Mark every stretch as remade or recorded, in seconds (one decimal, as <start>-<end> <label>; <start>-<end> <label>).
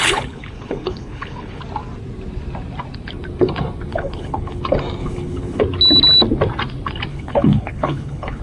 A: 0.0-1.6 remade; 1.6-3.9 recorded; 3.9-4.6 remade; 4.6-5.0 recorded; 5.0-5.6 remade; 5.6-7.1 recorded; 7.1-8.4 remade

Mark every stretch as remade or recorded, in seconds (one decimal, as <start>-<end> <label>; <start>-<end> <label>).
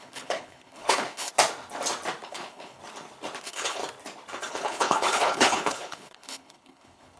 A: 0.0-1.3 remade; 1.3-2.3 recorded; 2.3-2.8 remade; 2.8-3.4 recorded; 3.4-3.8 remade; 3.8-4.5 recorded; 4.5-7.2 remade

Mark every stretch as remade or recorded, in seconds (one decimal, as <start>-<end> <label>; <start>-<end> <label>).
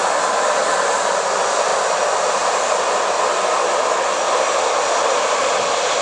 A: 0.0-6.0 recorded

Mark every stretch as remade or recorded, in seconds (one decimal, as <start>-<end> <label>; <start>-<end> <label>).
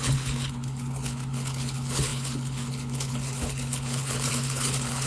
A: 0.0-5.1 remade